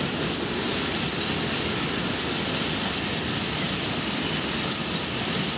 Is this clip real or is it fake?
real